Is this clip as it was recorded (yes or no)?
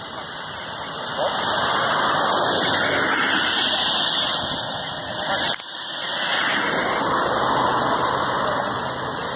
yes